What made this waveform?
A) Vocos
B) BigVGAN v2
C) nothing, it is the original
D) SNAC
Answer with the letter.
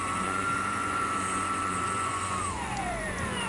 A